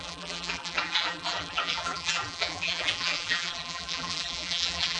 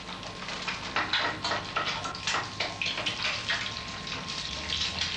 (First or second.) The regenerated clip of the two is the first